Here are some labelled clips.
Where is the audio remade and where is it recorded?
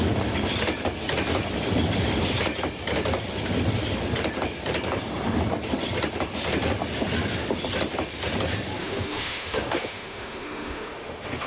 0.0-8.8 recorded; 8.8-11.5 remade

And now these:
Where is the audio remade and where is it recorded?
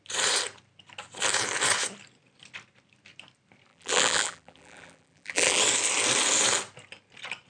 0.0-3.7 recorded; 3.7-5.6 remade; 5.6-7.5 recorded